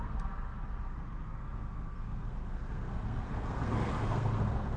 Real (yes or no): no